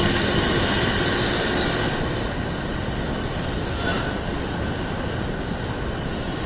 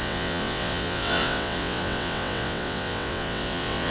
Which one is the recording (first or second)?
first